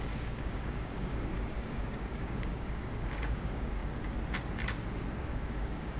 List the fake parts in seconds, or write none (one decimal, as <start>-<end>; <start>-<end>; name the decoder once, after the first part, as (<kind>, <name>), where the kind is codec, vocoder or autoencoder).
0.0-3.8 (codec, DAC); 5.2-6.0